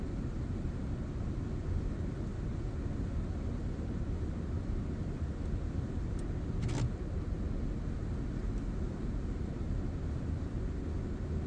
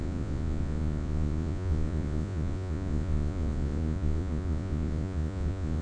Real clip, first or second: first